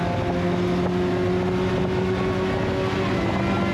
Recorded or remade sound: recorded